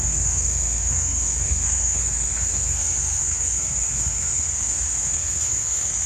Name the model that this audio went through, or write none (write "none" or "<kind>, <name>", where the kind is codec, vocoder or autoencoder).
codec, SNAC